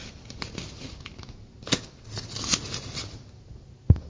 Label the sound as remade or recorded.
recorded